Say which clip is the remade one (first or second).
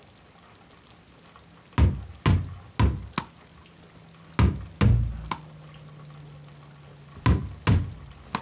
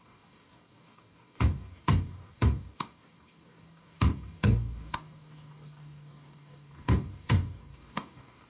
second